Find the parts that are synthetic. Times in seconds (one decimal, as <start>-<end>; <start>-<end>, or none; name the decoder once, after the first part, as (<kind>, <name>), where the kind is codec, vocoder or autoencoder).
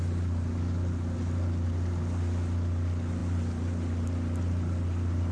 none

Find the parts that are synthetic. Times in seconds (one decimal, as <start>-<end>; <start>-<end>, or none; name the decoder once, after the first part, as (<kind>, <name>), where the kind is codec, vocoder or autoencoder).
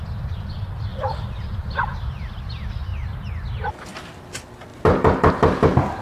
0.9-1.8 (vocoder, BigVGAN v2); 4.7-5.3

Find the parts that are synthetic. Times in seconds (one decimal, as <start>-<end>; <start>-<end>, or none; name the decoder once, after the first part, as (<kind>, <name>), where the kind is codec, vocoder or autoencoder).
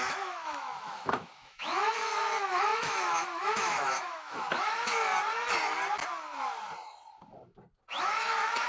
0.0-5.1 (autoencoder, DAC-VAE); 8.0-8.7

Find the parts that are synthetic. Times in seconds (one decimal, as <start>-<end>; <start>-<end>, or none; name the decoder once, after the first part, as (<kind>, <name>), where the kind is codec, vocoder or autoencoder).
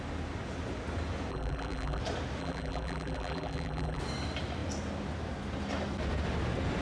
1.3-2.0 (vocoder, BigVGAN v2); 2.4-4.0